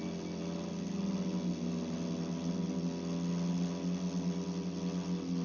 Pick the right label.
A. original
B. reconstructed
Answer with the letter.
A